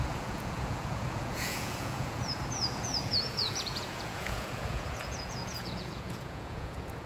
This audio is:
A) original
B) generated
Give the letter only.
B